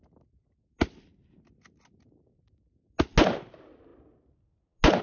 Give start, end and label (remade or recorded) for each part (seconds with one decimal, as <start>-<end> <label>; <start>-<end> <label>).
0.0-5.0 recorded